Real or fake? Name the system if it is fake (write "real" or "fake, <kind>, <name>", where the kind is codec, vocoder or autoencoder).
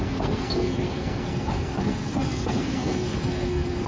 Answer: fake, codec, SNAC